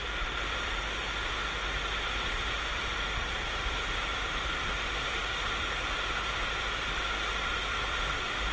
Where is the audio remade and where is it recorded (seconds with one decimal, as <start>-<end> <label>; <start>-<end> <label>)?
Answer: 0.0-0.8 remade; 0.8-2.3 recorded; 2.3-8.5 remade